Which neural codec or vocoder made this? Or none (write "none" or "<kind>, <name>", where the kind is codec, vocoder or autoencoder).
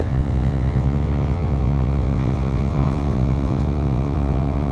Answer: vocoder, WaveNeXt